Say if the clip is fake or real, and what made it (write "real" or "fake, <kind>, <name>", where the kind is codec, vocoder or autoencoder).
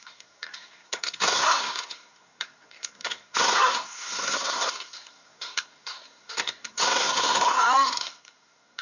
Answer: fake, codec, SNAC